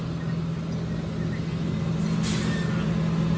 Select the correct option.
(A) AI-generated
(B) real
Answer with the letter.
B